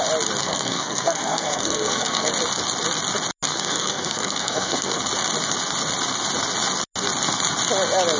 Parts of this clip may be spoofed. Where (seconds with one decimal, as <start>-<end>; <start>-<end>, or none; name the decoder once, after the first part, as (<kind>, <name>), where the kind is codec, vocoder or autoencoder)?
0.4-2.3 (codec, SNAC); 3.5-5.0